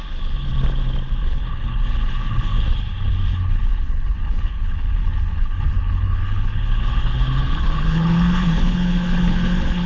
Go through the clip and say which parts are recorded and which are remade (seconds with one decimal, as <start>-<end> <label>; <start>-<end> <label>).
0.0-0.5 remade; 0.5-1.2 recorded; 1.2-9.9 remade

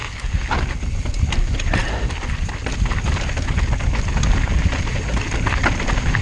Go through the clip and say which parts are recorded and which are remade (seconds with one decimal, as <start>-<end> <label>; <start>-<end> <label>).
0.0-6.2 recorded